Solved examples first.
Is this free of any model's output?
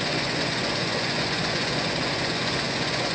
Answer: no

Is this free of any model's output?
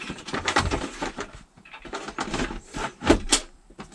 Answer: no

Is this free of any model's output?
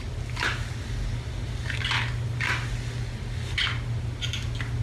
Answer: yes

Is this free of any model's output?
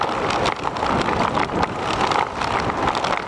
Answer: yes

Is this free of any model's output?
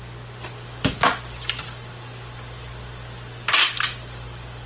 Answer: yes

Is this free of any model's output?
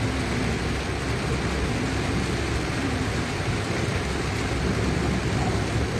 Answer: yes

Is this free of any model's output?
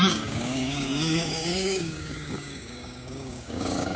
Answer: no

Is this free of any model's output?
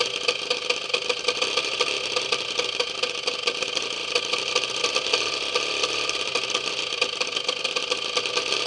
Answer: no